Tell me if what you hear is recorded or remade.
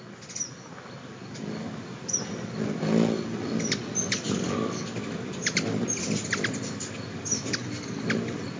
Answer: recorded